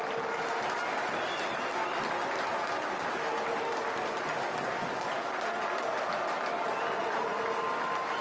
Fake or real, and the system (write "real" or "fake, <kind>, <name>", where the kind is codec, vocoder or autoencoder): real